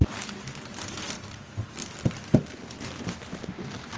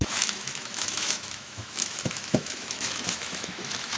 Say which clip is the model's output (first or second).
second